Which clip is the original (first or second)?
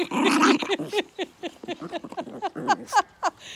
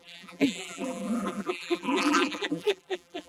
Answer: first